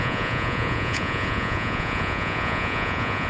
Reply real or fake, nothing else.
fake